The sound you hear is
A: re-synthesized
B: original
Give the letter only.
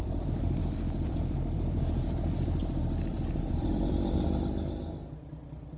A